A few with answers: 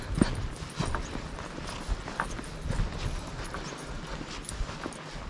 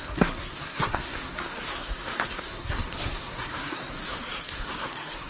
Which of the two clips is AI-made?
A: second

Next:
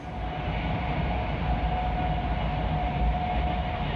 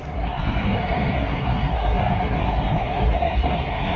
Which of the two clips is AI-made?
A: second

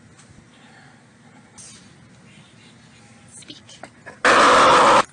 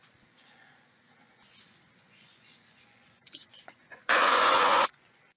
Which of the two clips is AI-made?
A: second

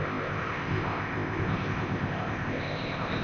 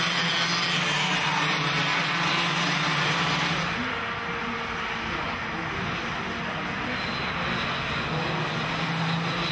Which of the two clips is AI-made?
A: first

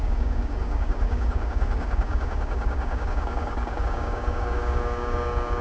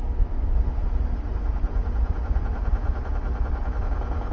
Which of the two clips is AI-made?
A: first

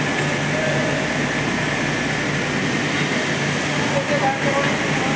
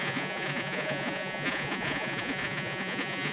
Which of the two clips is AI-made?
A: second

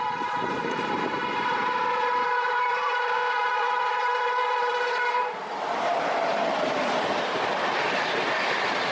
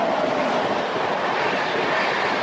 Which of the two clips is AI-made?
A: first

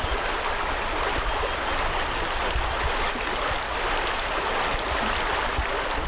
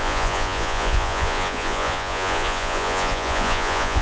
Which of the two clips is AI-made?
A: second